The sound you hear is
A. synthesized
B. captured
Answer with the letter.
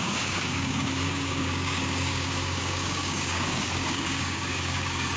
A